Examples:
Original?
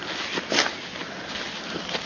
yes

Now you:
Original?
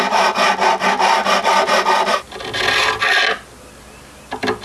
yes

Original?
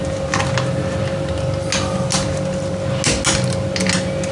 yes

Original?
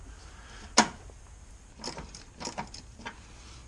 yes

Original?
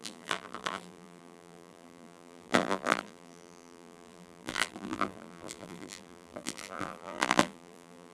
no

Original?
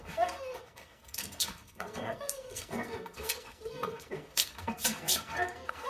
no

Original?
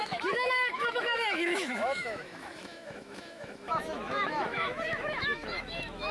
no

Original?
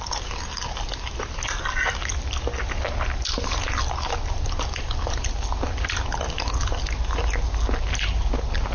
yes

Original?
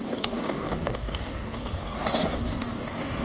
no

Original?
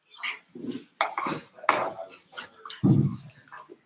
yes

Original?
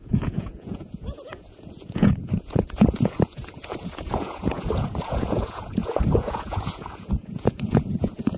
no